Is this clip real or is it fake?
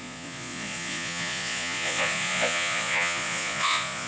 fake